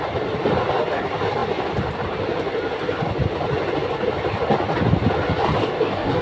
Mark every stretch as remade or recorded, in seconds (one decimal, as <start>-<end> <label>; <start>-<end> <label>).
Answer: 0.0-5.6 recorded; 5.6-6.2 remade